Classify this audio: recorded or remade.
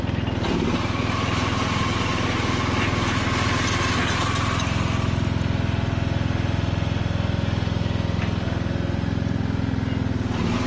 recorded